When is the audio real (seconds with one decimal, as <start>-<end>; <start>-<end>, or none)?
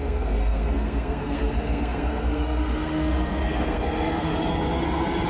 4.3-5.3